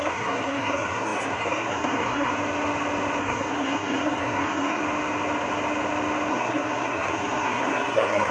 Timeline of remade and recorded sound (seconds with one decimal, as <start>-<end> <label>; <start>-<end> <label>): 0.0-2.3 remade; 2.3-3.2 recorded; 3.2-4.8 remade; 4.8-6.3 recorded; 6.3-8.3 remade